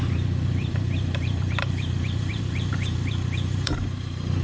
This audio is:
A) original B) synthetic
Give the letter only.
B